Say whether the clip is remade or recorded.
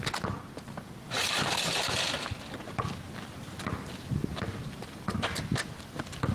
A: recorded